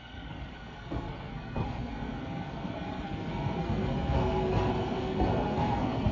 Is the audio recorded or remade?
remade